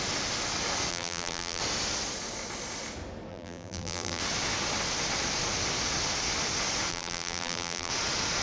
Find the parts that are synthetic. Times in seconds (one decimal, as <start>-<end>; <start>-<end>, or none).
0.9-1.6; 3.3-4.2; 6.9-7.9